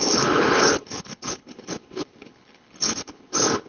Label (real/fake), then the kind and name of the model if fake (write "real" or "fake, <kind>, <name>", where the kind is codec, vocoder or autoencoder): fake, codec, HILCodec